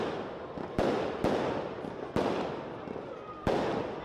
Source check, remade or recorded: recorded